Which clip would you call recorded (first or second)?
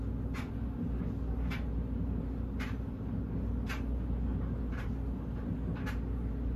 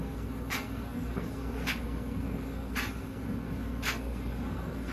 first